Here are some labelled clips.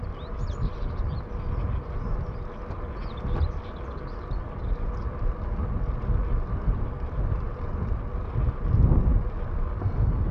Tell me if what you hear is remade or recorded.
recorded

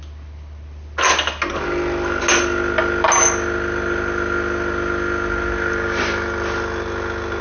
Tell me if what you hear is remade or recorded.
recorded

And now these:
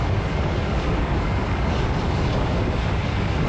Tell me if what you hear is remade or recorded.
remade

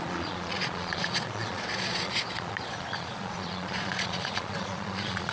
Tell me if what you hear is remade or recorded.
remade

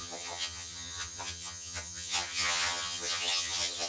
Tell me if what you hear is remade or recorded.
remade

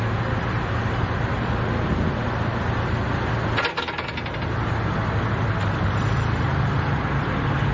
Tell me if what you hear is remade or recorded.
recorded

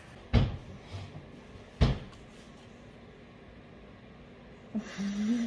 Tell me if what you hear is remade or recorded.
recorded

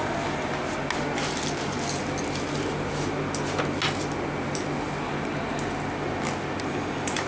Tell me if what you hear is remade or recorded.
recorded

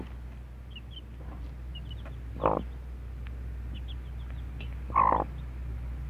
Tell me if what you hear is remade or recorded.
recorded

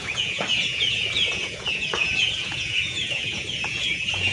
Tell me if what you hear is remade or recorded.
remade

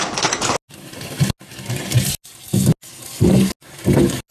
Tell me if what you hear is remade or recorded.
recorded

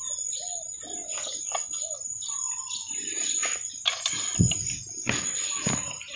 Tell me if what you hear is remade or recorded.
recorded